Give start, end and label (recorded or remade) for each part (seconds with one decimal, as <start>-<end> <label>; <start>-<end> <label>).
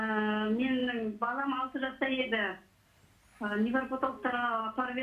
0.0-5.0 recorded